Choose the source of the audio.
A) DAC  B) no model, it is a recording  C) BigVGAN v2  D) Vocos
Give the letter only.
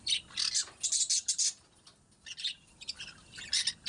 B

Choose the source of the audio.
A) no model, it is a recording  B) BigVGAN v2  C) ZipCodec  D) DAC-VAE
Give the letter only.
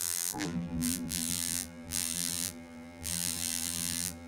B